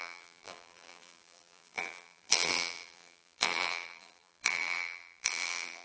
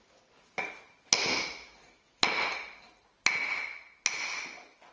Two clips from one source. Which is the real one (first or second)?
second